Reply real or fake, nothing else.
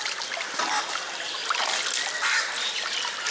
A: fake